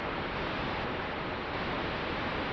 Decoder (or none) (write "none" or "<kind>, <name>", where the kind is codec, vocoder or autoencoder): none